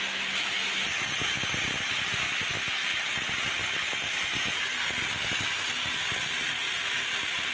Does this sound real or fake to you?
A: real